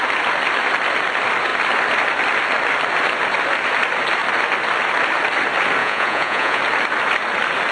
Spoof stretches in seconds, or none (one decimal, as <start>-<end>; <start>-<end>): 5.8-6.6